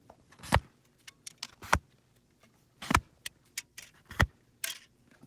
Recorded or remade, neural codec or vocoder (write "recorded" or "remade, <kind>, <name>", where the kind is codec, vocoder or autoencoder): recorded